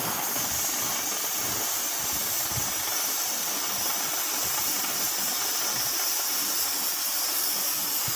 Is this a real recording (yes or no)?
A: yes